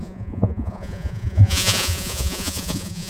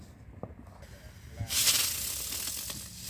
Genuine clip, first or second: second